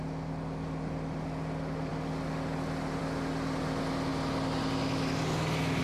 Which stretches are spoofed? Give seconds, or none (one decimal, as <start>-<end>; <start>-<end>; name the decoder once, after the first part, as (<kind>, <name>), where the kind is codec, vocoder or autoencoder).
none